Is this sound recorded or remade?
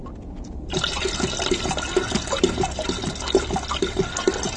recorded